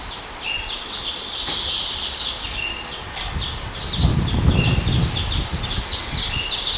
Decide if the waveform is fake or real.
real